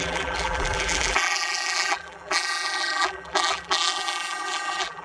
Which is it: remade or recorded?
remade